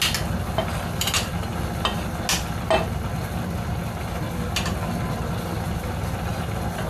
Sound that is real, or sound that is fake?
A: real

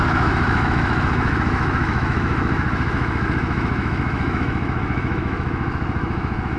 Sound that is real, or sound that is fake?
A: fake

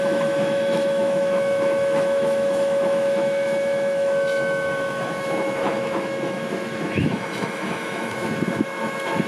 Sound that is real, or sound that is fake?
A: fake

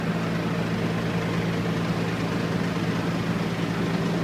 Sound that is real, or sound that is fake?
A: real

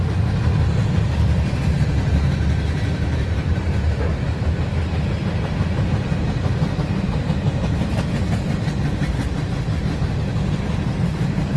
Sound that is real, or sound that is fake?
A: real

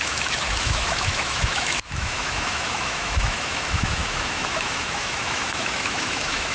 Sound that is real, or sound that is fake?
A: fake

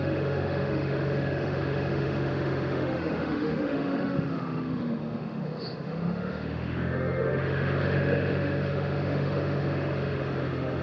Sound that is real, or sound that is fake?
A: fake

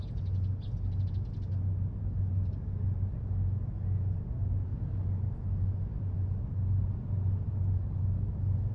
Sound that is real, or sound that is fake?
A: real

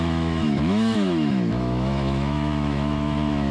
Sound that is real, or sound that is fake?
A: fake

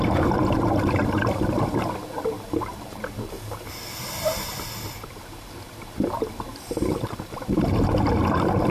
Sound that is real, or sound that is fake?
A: real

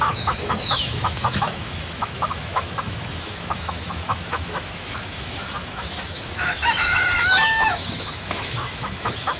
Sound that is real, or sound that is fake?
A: fake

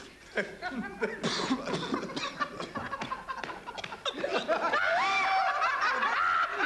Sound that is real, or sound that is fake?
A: real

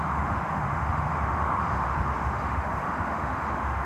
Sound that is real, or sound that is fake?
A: fake